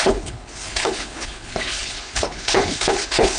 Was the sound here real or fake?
fake